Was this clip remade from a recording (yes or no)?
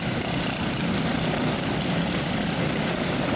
no